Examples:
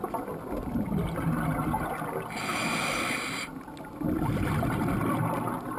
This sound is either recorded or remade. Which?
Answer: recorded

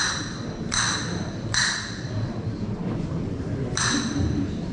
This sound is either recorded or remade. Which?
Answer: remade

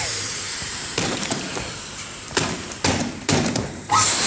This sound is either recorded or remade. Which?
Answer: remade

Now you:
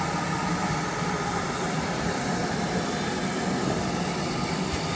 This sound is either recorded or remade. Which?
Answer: remade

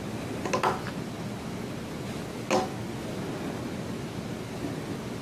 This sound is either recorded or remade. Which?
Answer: recorded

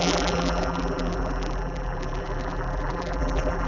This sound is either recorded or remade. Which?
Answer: remade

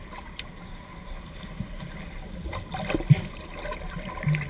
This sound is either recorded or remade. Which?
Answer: recorded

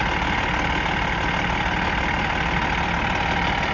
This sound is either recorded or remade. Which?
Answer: recorded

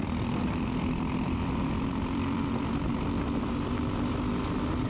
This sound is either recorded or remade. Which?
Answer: remade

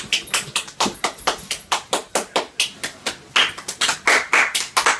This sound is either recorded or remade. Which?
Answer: recorded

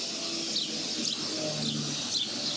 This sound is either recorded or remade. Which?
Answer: recorded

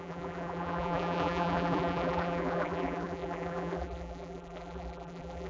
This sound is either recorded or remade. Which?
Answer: remade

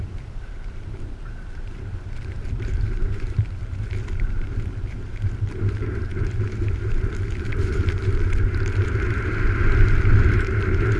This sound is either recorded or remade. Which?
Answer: remade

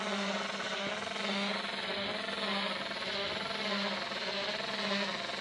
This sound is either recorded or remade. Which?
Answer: recorded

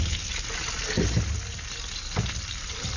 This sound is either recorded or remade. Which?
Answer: recorded